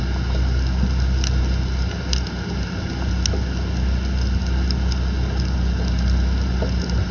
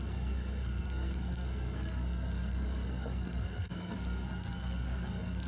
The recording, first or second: first